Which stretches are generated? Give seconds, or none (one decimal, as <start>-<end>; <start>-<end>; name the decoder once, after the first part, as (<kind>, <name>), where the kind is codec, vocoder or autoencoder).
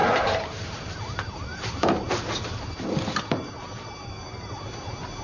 0.0-1.0 (vocoder, BigVGAN v2)